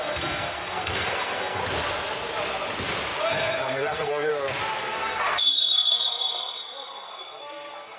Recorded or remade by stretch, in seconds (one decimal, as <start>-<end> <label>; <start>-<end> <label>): 0.0-1.6 remade; 1.6-3.3 recorded; 3.3-4.3 remade; 4.3-4.8 recorded; 4.8-8.0 remade